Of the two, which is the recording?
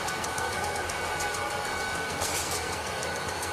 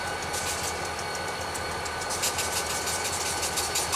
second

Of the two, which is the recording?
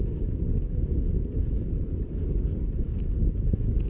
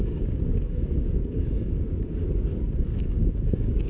first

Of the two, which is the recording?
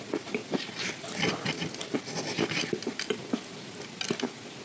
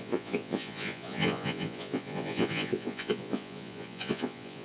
first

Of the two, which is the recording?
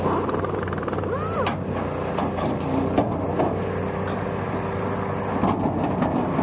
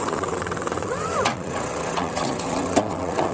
first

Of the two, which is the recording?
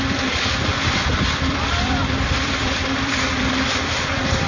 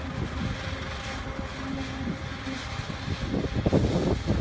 second